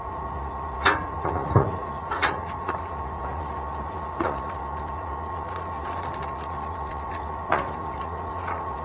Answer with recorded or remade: remade